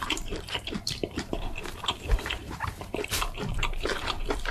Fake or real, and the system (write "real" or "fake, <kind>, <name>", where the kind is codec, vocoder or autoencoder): fake, vocoder, BigVGAN v2